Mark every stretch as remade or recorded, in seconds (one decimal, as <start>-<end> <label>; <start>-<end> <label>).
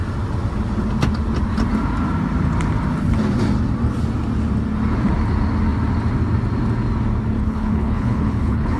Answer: 0.0-7.4 recorded; 7.4-8.8 remade